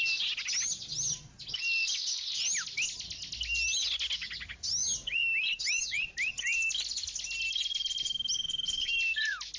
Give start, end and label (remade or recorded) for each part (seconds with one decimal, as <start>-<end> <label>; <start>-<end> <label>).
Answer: 0.0-9.6 recorded